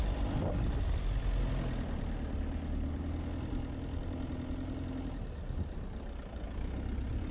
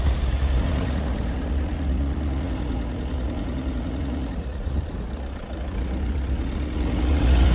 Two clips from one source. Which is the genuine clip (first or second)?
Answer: first